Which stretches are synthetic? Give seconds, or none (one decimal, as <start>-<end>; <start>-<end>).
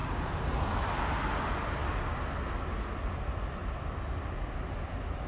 none